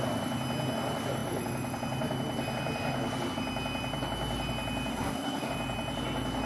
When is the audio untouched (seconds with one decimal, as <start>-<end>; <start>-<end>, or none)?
0.0-4.9; 5.5-6.5